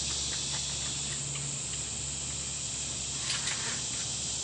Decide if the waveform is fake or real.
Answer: real